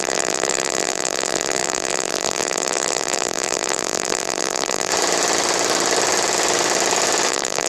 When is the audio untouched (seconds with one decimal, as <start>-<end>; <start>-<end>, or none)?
4.9-7.3